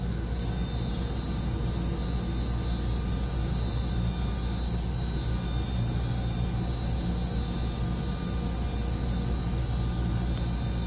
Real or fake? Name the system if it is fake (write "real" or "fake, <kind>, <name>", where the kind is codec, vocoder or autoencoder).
real